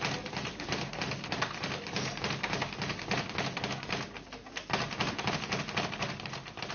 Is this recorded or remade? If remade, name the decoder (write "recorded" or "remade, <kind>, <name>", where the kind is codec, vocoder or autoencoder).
recorded